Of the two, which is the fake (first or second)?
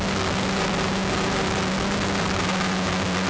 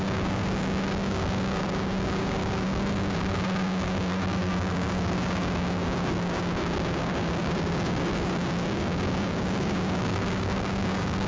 second